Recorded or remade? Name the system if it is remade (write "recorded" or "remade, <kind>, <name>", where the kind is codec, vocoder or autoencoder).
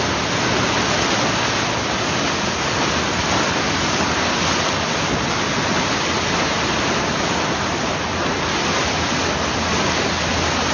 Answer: recorded